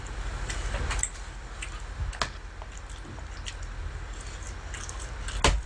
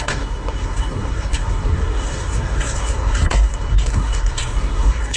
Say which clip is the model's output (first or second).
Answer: second